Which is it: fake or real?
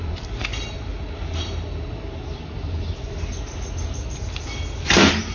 real